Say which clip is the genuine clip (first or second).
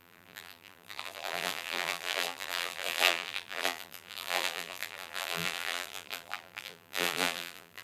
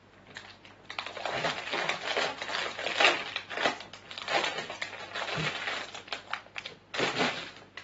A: second